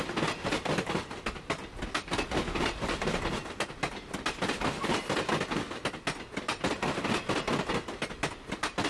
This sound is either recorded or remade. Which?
recorded